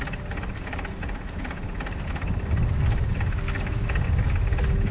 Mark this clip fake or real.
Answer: real